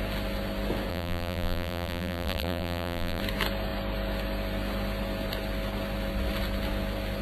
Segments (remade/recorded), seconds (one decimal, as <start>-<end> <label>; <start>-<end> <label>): 0.0-0.9 recorded; 0.9-3.2 remade; 3.2-7.2 recorded